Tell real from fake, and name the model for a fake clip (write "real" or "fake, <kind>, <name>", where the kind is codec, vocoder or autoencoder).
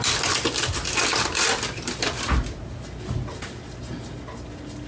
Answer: real